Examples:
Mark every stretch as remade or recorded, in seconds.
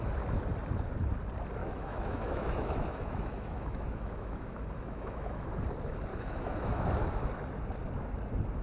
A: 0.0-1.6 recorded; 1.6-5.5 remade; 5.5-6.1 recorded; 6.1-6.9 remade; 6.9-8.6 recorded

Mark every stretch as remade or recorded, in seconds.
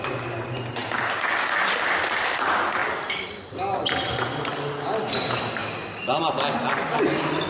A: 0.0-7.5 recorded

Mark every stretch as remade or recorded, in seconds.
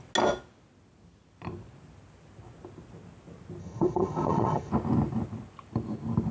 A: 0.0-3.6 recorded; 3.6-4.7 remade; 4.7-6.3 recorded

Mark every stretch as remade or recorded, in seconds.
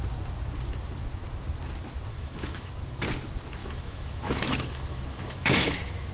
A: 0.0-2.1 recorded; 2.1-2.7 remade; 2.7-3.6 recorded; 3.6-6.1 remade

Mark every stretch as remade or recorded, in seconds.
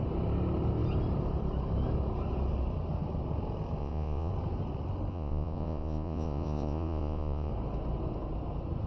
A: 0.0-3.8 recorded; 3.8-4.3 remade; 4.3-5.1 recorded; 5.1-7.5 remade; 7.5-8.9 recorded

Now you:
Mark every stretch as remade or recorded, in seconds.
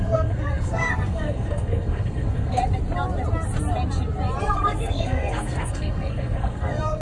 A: 0.0-2.6 remade; 2.6-4.4 recorded; 4.4-7.0 remade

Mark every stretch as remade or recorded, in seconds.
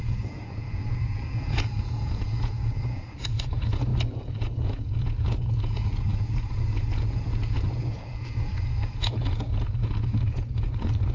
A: 0.0-11.1 remade